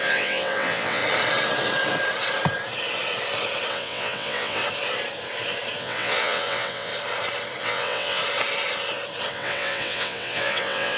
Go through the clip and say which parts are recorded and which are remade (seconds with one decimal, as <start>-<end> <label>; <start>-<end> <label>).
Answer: 0.0-1.0 remade; 1.0-3.7 recorded; 3.7-4.6 remade; 4.6-5.8 recorded; 5.8-6.9 remade; 6.9-7.6 recorded; 7.6-8.2 remade; 8.2-9.3 recorded; 9.3-11.0 remade